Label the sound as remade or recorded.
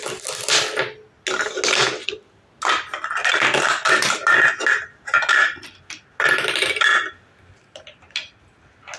recorded